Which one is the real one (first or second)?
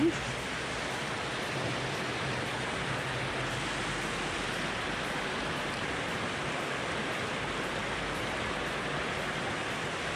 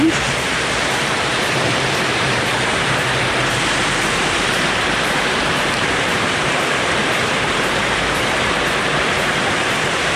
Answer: first